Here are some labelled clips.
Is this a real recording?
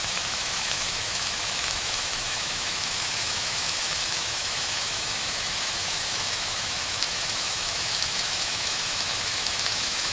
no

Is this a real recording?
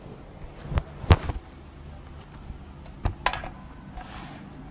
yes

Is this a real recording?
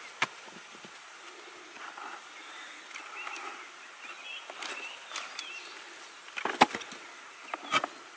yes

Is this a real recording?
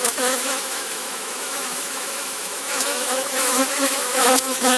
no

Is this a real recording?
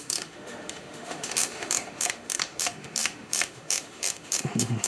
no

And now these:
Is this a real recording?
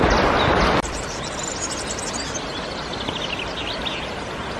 yes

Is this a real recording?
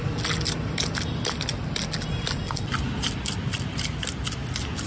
yes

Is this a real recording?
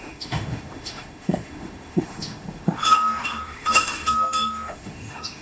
no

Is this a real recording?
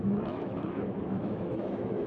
no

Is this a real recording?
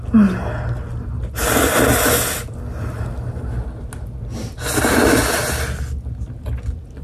yes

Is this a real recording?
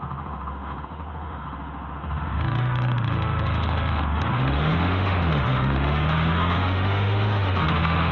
no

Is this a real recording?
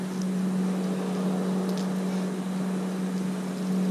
yes